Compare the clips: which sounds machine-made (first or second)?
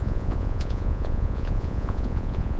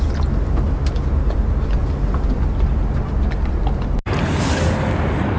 first